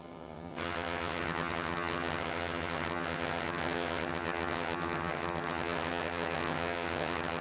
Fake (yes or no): yes